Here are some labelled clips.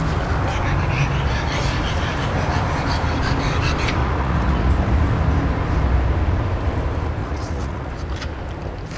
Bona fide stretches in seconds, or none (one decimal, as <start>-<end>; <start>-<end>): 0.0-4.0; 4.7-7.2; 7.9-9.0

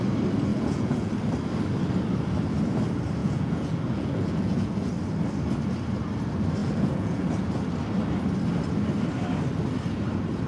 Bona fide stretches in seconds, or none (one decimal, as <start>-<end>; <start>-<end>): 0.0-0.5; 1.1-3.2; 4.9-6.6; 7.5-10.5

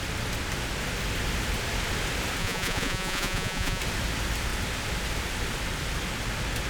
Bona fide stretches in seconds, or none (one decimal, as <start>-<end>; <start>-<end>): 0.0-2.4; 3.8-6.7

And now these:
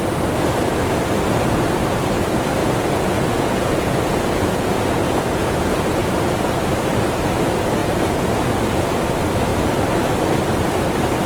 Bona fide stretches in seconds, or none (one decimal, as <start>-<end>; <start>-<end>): 0.0-2.6; 5.9-7.8; 9.0-11.3